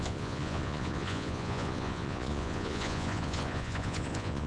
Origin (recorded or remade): remade